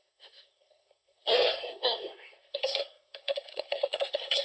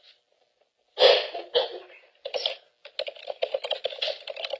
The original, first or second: second